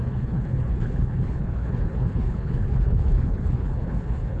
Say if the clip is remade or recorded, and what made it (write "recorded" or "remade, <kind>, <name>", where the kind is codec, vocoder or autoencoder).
remade, codec, HILCodec